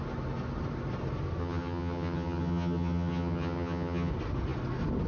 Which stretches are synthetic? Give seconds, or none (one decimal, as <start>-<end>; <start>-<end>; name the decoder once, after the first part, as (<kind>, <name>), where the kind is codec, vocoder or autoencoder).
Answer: 1.4-4.1 (vocoder, HiFi-GAN)